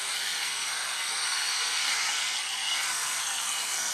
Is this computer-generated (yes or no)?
yes